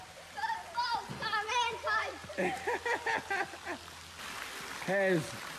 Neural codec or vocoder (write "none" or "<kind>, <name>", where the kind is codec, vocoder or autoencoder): none